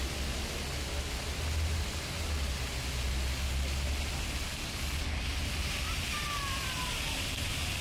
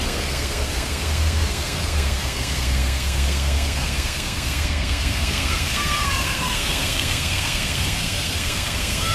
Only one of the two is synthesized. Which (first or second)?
second